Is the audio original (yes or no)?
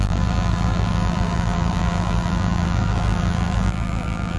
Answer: no